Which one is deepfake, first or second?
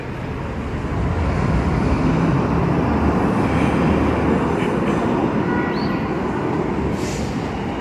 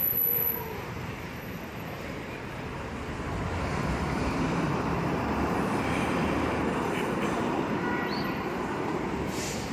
second